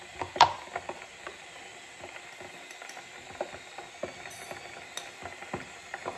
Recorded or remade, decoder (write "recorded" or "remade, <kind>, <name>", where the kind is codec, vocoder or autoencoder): recorded